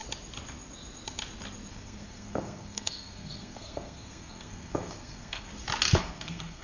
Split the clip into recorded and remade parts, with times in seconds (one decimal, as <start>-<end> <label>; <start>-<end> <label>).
0.0-1.7 recorded; 1.7-5.5 remade; 5.5-6.0 recorded; 6.0-6.6 remade